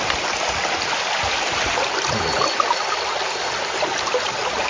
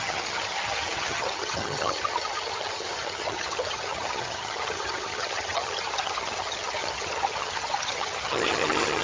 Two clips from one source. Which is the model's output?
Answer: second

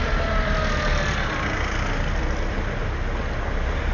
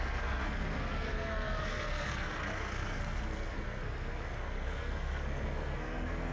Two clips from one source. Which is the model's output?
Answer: second